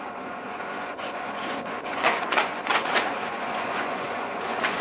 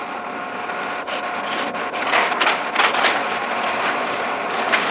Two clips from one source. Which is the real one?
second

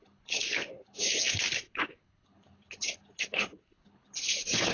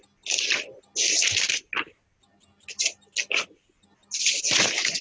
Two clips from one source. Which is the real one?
second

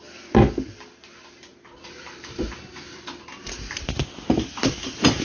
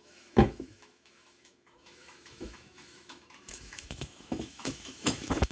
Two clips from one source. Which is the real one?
first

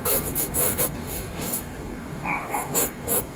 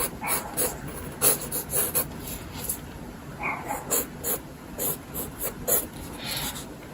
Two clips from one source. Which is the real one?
second